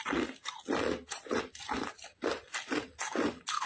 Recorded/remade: recorded